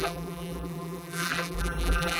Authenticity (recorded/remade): remade